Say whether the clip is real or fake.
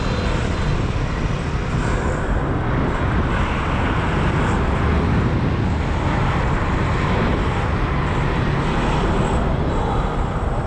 real